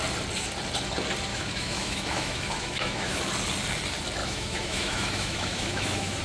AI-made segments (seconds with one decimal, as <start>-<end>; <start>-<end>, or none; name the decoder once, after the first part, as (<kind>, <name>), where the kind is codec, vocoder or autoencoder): 1.3-3.3 (autoencoder, DAC-VAE); 4.2-6.2